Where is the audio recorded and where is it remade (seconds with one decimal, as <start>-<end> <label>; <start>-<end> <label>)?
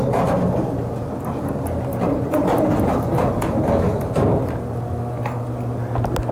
0.0-1.9 recorded; 1.9-3.3 remade; 3.3-6.3 recorded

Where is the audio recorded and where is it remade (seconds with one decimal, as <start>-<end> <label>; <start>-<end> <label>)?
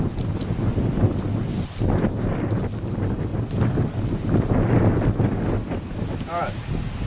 0.0-7.1 recorded